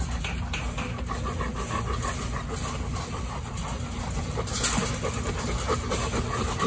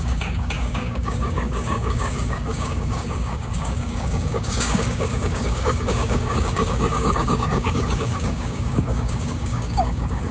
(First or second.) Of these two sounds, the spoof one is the second